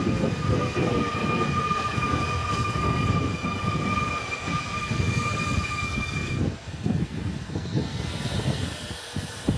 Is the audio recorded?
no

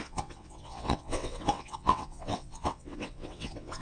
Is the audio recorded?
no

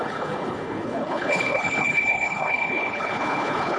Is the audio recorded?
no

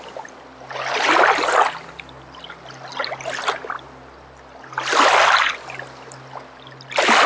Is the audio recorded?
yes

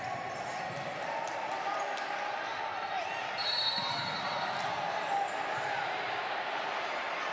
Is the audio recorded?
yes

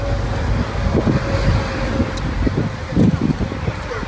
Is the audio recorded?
yes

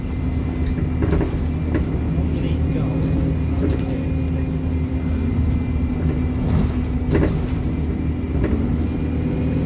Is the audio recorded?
yes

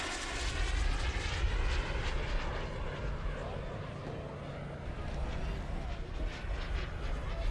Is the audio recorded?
yes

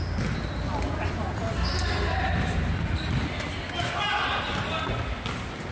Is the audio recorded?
yes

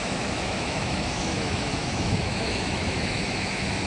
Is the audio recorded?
no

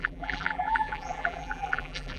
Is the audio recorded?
no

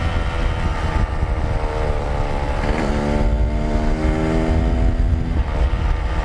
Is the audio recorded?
yes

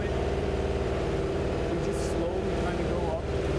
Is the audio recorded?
no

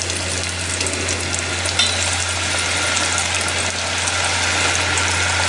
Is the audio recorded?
yes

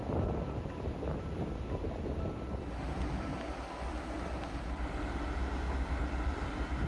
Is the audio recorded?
yes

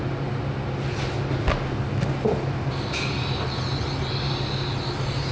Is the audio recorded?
yes